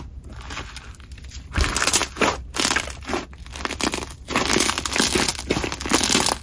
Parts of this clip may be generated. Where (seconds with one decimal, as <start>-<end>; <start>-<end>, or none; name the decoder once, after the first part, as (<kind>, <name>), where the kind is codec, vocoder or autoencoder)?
none